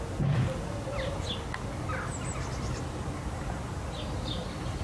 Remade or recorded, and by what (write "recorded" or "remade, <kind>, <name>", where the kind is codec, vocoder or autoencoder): recorded